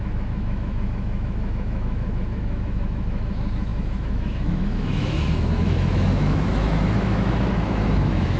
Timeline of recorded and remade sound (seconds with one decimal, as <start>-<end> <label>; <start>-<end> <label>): 0.0-8.4 remade